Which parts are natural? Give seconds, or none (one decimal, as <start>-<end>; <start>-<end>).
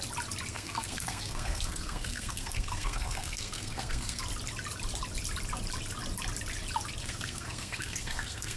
0.0-0.5; 4.2-7.0